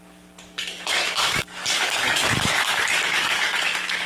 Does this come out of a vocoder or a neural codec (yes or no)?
yes